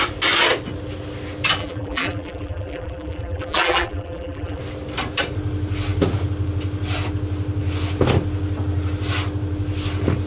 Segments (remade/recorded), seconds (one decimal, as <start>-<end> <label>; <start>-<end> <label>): 0.0-1.6 recorded; 1.6-4.6 remade; 4.6-10.3 recorded